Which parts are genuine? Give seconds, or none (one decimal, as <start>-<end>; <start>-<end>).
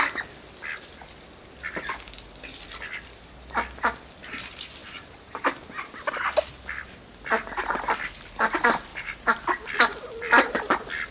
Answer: 0.0-4.8; 5.3-8.9; 9.7-11.1